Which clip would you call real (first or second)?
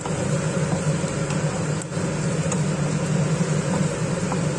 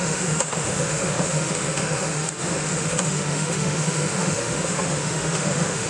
first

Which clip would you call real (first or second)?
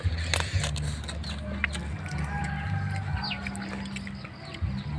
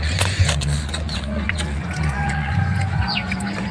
first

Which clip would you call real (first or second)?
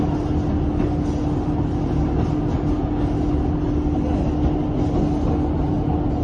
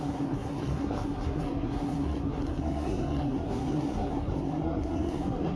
first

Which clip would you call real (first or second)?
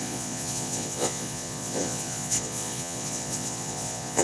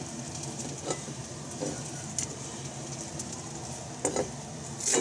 second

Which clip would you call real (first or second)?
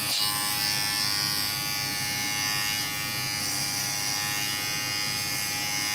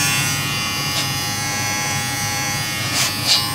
first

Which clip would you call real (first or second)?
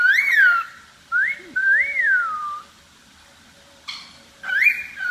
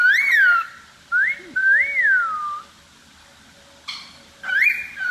second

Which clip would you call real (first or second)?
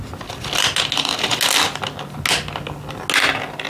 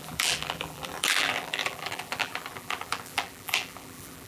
first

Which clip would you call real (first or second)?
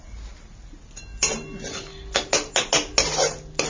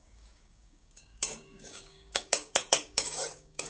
first